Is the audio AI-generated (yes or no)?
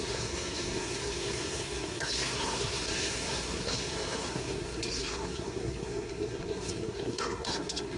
yes